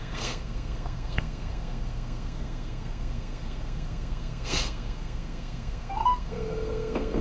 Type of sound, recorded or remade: remade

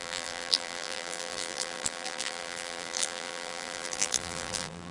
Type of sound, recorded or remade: remade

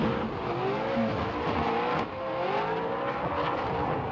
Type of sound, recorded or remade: recorded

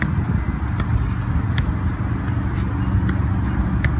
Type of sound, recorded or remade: recorded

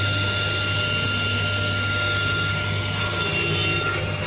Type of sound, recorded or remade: recorded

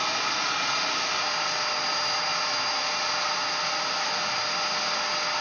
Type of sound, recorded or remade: recorded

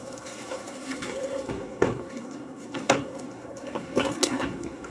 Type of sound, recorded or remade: remade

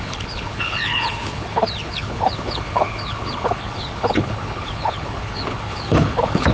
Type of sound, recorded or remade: remade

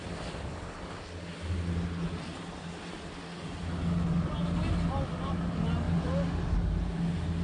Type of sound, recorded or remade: recorded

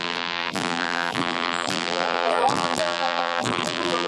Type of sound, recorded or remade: remade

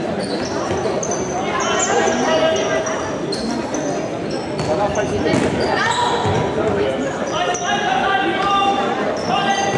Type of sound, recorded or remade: recorded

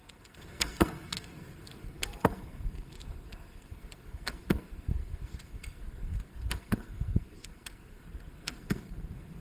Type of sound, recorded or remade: remade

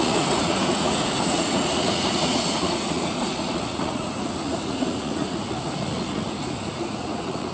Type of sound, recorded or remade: remade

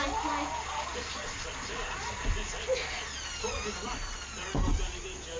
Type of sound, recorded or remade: recorded